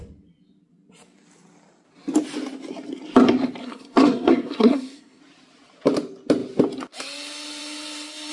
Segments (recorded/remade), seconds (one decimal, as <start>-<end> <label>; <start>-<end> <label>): 0.0-3.6 recorded; 3.6-5.2 remade; 5.2-8.3 recorded